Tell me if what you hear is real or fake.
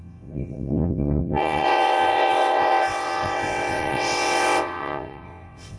fake